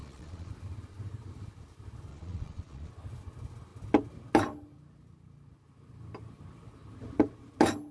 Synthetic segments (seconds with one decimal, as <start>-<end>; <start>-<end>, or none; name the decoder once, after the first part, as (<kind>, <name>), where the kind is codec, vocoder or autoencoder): 0.0-0.5 (vocoder, Vocos); 2.1-2.9